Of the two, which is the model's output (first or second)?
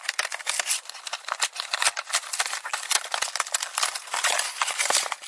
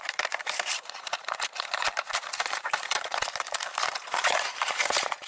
second